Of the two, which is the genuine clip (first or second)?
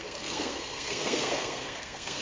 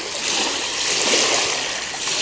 second